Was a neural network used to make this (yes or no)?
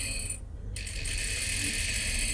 no